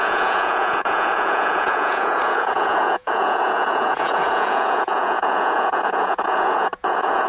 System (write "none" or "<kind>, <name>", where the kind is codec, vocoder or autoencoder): vocoder, Vocos